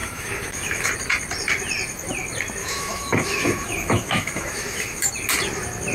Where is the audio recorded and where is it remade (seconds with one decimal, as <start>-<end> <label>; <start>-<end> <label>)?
0.0-0.9 remade; 0.9-2.6 recorded; 2.6-5.1 remade; 5.1-5.9 recorded